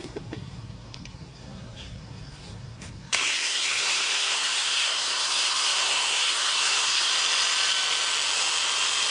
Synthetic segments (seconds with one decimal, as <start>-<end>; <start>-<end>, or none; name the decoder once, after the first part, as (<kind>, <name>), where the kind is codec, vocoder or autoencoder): 0.0-7.1 (codec, SNAC)

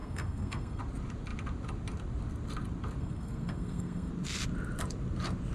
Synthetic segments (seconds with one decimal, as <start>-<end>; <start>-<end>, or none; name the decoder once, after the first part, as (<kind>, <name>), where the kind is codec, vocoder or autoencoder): 0.0-0.8 (codec, SNAC); 3.0-4.1